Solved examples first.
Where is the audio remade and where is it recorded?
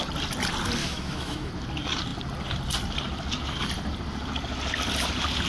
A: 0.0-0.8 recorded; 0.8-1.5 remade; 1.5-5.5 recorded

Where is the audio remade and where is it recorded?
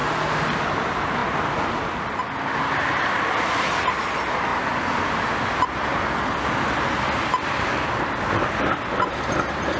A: 0.0-0.7 recorded; 0.7-1.2 remade; 1.2-2.8 recorded; 2.8-4.5 remade; 4.5-8.6 recorded; 8.6-9.8 remade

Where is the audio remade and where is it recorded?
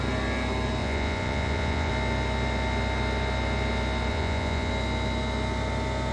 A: 0.0-0.8 recorded; 0.8-1.9 remade; 1.9-4.1 recorded; 4.1-4.7 remade; 4.7-6.1 recorded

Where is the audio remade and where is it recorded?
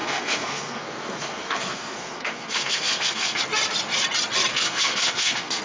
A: 0.0-3.4 remade; 3.4-4.5 recorded; 4.5-5.6 remade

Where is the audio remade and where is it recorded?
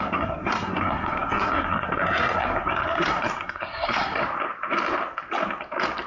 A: 0.0-4.2 remade; 4.2-6.1 recorded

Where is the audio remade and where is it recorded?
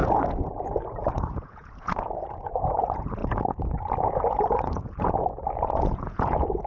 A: 0.0-6.7 remade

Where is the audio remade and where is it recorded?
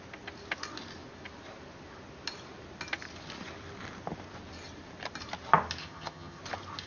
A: 0.0-5.8 recorded; 5.8-6.4 remade; 6.4-6.9 recorded